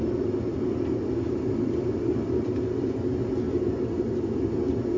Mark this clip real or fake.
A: real